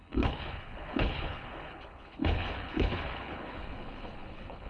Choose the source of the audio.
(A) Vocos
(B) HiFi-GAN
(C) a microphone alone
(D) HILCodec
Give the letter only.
D